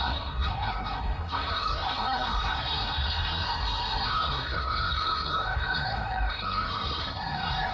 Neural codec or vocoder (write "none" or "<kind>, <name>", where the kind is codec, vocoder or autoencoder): codec, SNAC